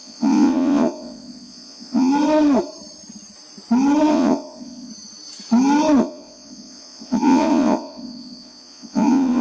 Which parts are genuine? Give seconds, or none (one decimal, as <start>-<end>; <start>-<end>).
2.1-4.1; 4.9-6.0